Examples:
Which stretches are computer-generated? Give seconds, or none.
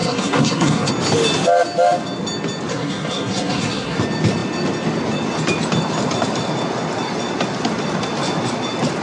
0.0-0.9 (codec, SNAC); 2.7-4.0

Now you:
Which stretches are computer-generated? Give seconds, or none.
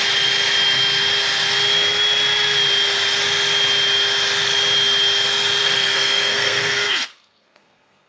5.6-8.1 (codec, SNAC)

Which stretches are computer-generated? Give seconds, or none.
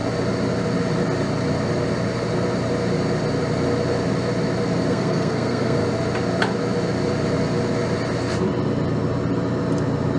4.9-5.8 (codec, SNAC)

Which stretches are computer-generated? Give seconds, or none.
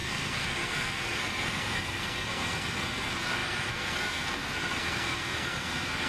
0.0-6.1 (codec, SNAC)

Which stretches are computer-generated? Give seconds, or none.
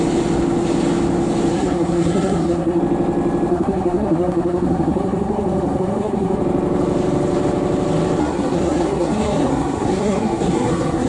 1.5-2.8 (codec, SNAC); 3.5-6.4; 8.2-11.1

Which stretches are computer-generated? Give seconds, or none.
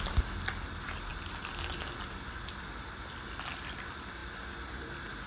none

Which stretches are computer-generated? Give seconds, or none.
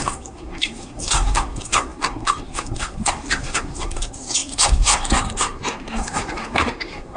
0.0-7.2 (codec, SNAC)